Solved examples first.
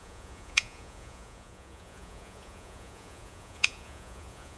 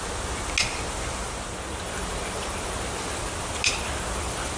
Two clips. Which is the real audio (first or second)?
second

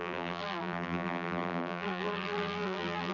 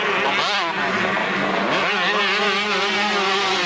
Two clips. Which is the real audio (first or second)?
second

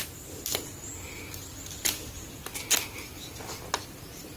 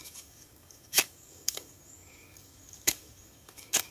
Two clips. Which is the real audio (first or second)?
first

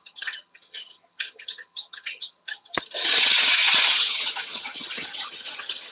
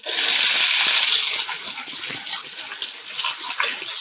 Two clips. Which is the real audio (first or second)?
second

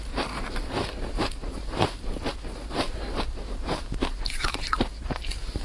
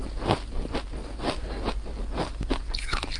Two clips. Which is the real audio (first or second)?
second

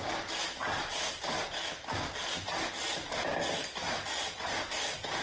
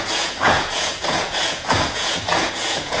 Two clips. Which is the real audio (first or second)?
first